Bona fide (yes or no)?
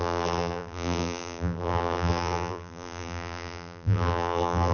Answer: no